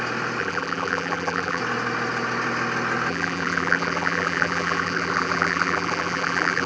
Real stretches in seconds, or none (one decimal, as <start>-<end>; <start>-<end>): 0.0-0.4; 1.6-3.1